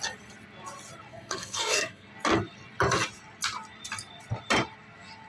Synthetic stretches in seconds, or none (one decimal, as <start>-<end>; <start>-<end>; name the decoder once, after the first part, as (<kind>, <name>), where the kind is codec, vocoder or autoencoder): 1.1-2.1 (codec, SNAC)